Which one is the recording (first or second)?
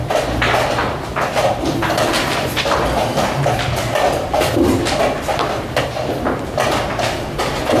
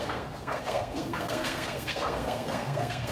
first